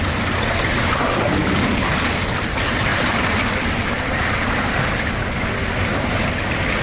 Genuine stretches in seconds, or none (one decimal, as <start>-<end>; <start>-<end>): 0.0-6.8